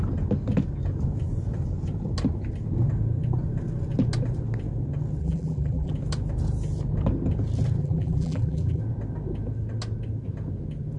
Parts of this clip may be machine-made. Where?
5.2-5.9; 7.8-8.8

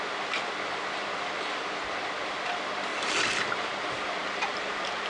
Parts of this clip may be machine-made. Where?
2.9-3.7; 4.2-5.1